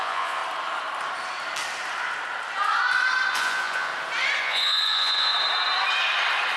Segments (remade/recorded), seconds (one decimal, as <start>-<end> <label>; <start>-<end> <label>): 0.0-0.4 remade; 0.4-3.3 recorded; 3.3-3.9 remade; 3.9-4.4 recorded; 4.4-5.3 remade; 5.3-6.6 recorded